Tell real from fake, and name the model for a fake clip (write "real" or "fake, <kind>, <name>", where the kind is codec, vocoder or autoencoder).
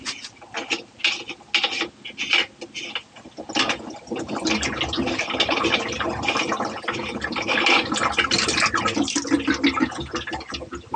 real